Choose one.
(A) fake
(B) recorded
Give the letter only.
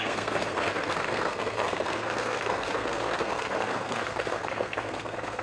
A